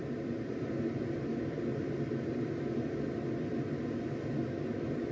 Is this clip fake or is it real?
fake